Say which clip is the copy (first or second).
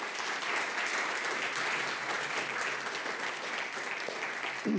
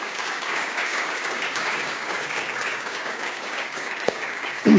second